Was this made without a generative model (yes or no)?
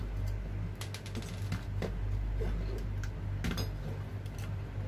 yes